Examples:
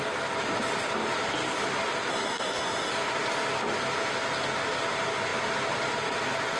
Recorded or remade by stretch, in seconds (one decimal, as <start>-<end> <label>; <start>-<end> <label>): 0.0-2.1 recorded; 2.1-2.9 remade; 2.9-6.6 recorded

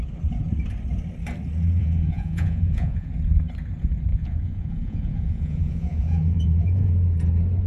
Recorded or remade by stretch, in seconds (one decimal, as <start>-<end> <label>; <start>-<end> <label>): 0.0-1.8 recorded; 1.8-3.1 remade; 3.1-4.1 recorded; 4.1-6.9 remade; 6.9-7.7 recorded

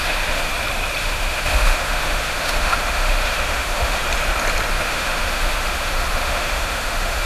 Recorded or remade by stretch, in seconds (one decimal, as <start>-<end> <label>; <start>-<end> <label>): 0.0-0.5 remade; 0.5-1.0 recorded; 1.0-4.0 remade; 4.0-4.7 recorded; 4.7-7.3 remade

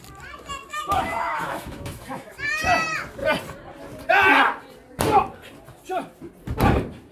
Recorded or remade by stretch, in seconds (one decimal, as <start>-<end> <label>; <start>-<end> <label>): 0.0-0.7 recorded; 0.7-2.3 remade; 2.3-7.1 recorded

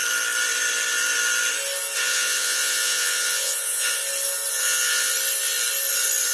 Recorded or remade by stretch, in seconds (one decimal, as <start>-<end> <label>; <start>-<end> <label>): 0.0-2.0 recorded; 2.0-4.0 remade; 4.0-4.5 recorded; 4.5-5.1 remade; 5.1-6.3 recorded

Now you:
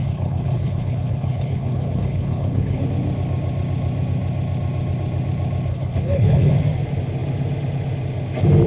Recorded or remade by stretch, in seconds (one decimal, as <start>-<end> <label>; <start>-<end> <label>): 0.0-2.8 remade; 2.8-5.7 recorded; 5.7-6.5 remade; 6.5-8.7 recorded

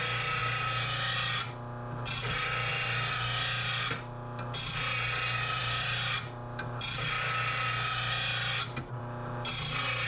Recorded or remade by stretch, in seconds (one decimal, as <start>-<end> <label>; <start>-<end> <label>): 0.0-10.1 recorded